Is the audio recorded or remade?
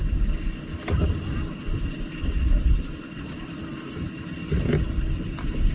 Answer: recorded